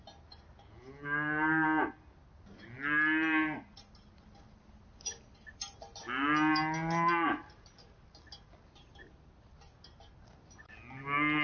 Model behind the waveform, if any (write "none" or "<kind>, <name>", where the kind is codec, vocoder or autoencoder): none